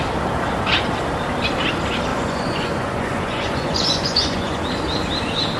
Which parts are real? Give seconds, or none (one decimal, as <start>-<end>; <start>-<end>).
0.0-2.1; 4.6-5.6